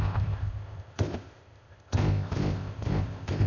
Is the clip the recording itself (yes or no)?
no